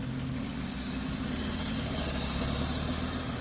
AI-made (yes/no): no